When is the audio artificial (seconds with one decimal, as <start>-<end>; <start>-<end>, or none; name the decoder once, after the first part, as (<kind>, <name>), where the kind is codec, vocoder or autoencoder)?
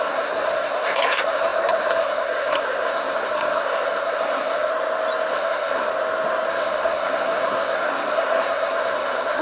0.0-4.7 (codec, SNAC); 5.3-5.9; 6.5-9.4